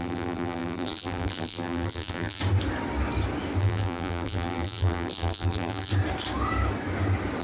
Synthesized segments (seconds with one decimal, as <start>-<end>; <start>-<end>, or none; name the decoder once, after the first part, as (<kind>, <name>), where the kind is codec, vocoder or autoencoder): 0.0-2.4 (vocoder, BigVGAN v2); 3.6-5.9

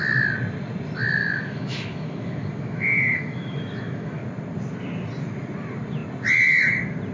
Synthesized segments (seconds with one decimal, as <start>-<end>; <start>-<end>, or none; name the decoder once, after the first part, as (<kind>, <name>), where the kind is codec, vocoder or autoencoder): 1.2-4.2 (autoencoder, DAC-VAE)

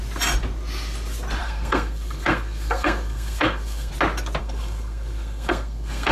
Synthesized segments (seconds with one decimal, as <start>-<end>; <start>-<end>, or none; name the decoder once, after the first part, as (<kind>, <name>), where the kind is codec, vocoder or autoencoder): 1.4-3.9 (codec, SNAC); 4.4-6.1